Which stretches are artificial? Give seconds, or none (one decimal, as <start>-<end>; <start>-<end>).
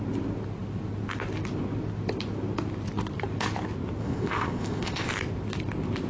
4.0-5.1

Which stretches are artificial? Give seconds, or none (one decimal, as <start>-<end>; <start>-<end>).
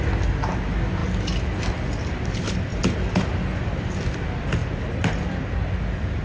none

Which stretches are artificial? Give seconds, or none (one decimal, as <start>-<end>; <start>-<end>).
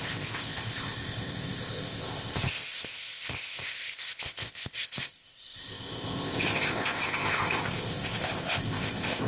0.0-9.3